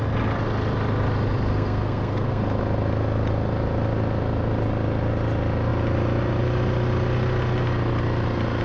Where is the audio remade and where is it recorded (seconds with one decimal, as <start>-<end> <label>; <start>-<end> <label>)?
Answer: 0.0-1.5 recorded; 1.5-2.4 remade; 2.4-8.6 recorded